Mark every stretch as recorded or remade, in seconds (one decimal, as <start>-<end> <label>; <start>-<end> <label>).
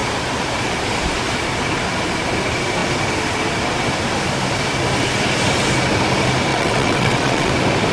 0.0-6.5 recorded; 6.5-7.5 remade; 7.5-7.9 recorded